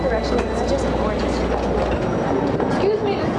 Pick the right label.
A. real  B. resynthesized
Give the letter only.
A